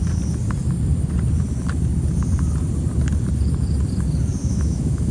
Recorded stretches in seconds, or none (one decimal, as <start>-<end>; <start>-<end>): 0.0-4.4

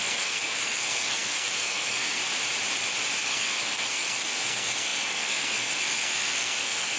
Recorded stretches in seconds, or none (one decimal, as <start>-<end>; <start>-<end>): 2.2-3.2

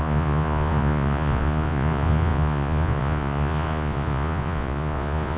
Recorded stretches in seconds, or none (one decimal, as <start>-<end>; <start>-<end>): none